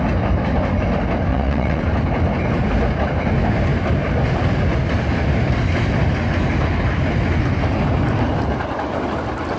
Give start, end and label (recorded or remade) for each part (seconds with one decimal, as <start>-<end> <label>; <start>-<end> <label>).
0.0-1.3 recorded; 1.3-1.8 remade; 1.8-9.6 recorded